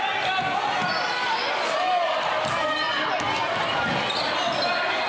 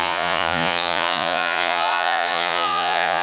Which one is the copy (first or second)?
second